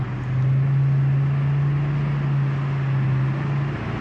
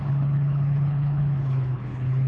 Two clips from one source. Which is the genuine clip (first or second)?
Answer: first